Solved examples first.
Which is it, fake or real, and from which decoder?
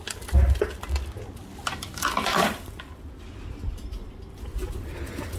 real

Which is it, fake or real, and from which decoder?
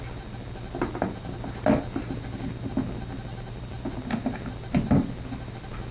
real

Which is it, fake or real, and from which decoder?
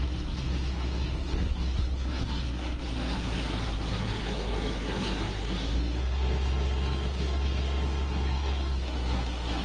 fake, codec, SNAC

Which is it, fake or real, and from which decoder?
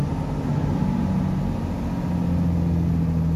real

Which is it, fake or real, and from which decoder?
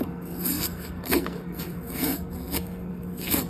fake, codec, SNAC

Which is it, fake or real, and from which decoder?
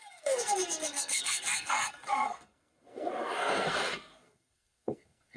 fake, codec, SNAC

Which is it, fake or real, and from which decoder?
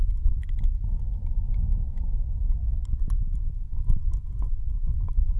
real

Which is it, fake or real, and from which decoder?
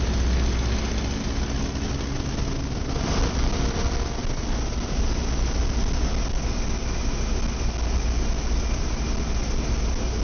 real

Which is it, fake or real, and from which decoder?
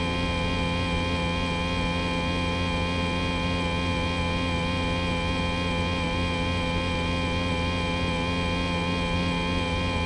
real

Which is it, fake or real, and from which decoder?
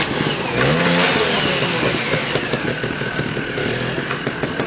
real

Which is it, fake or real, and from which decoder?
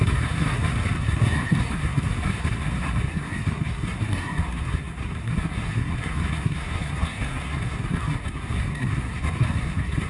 fake, codec, SNAC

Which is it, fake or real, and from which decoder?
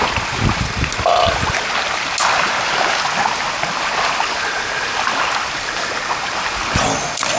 real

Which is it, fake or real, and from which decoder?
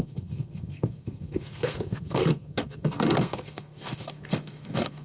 fake, codec, SNAC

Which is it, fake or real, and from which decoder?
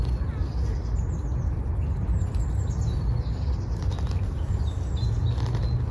real